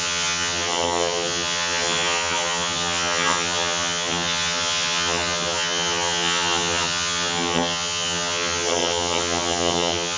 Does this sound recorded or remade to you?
remade